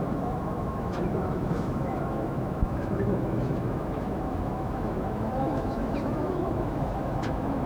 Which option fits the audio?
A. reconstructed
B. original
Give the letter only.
A